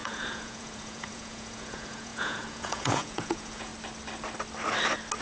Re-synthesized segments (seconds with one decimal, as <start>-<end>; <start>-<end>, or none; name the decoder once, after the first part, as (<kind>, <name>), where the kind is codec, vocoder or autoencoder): 0.0-3.7 (vocoder, Vocos)

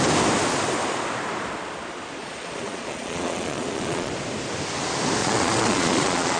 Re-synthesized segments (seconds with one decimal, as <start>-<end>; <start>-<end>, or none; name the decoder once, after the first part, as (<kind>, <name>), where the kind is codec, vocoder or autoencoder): 2.2-4.1 (vocoder, Vocos); 5.2-6.4

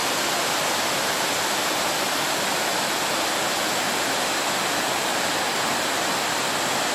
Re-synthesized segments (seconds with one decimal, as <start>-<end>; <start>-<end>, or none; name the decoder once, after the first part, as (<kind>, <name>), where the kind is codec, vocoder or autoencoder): none

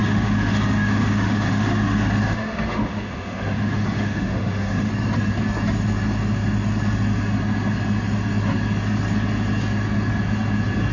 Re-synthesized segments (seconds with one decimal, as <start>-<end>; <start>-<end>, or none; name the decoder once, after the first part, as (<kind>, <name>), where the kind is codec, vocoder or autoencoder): 0.0-4.9 (autoencoder, DAC-VAE)

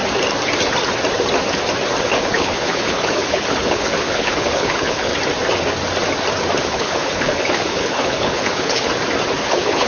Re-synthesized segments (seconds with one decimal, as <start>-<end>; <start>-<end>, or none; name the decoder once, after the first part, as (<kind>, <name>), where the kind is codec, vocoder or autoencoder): 2.0-5.1 (codec, HILCodec); 6.6-8.9; 9.4-9.9